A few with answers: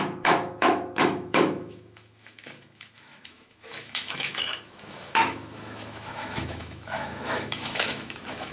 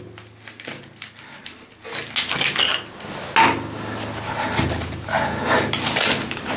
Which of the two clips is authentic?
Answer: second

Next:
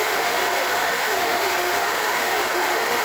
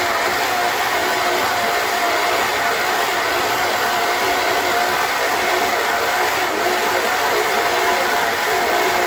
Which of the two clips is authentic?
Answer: second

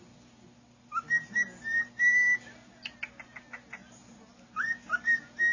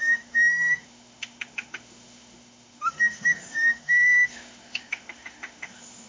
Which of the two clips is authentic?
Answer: first